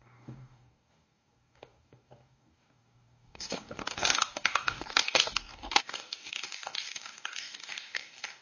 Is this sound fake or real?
fake